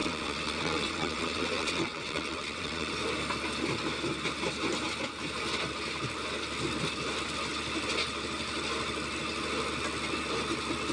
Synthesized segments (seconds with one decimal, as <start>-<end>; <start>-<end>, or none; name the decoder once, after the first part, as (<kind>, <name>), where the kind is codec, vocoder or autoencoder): 0.0-2.9 (vocoder, WaveNeXt)